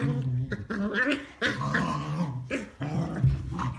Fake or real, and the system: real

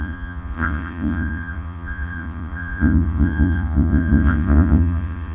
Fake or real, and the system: fake, vocoder, Vocos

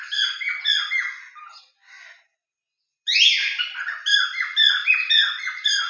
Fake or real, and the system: real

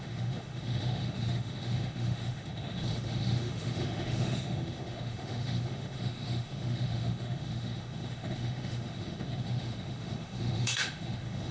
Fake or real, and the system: fake, autoencoder, DAC-VAE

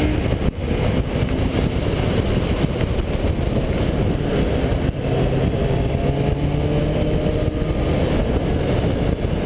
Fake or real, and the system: real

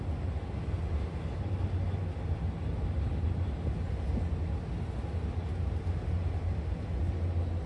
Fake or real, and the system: real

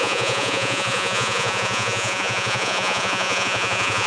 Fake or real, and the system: fake, vocoder, Vocos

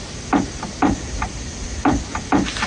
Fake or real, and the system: real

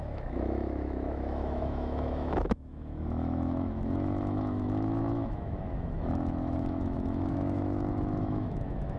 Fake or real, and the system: fake, autoencoder, DAC-VAE